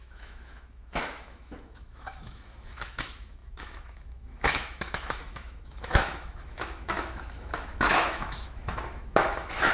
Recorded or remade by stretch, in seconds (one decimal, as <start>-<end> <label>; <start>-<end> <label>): 0.0-9.7 remade